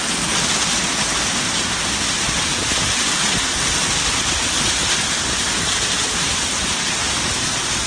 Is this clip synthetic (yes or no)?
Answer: no